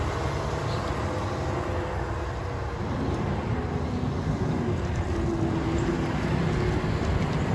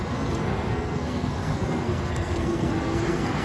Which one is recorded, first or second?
first